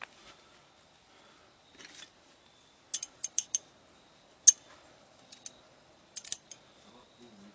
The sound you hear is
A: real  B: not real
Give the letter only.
A